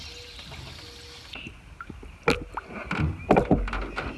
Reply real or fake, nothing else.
real